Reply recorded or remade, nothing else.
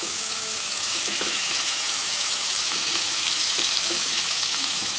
remade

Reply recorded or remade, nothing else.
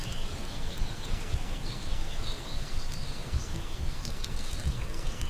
remade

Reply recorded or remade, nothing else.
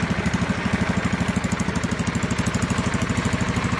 recorded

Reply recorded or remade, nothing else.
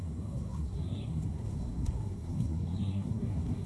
remade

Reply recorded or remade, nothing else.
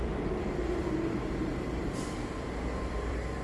remade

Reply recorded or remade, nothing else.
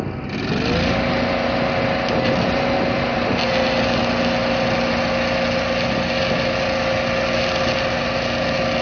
recorded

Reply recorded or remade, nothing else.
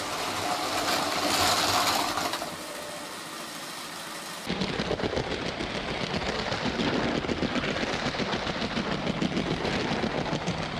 recorded